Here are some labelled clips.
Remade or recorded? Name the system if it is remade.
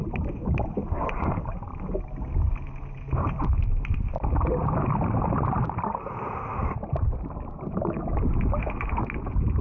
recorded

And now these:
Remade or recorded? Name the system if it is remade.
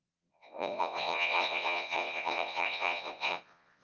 remade, vocoder, Vocos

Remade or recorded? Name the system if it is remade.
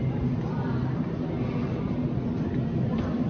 recorded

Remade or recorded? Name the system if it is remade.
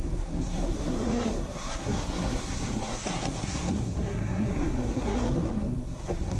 remade, codec, SNAC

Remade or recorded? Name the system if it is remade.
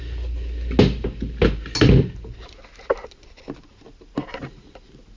recorded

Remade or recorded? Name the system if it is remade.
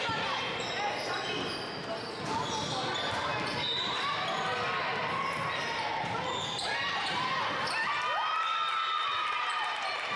recorded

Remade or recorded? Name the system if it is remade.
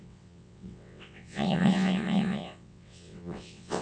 remade, vocoder, WaveNeXt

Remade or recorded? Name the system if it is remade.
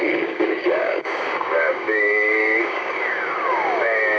remade, codec, DAC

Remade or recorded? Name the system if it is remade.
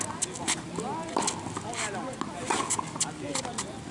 recorded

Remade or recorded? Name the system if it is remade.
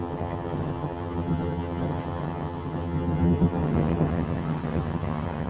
remade, vocoder, HiFi-GAN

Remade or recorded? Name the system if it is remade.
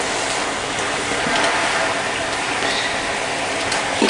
recorded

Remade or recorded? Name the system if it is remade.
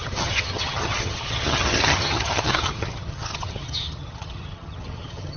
remade, vocoder, HiFi-GAN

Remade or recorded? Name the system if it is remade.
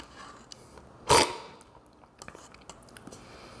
recorded